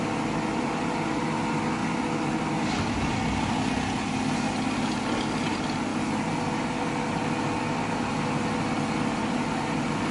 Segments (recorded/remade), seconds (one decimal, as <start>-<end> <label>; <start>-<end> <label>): 0.0-10.1 recorded